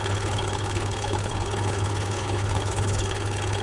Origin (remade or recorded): remade